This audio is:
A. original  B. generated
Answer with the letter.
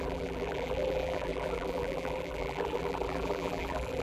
B